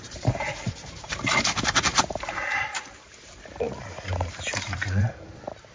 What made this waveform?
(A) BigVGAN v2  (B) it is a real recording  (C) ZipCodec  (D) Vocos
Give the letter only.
A